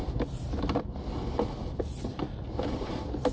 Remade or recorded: recorded